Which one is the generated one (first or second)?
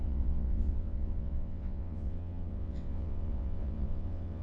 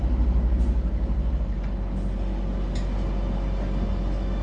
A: first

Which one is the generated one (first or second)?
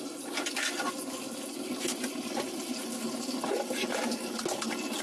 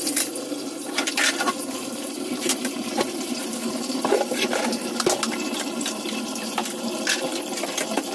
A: second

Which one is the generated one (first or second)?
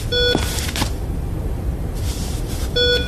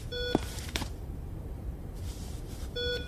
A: second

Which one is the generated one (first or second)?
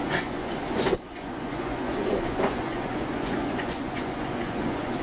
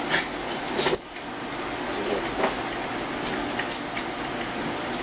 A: first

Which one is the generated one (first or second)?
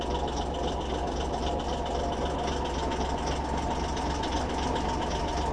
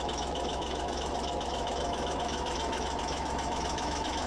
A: second